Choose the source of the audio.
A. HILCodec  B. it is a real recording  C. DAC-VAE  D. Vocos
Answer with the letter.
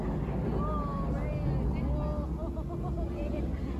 B